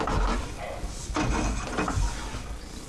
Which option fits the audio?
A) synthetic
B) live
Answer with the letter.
B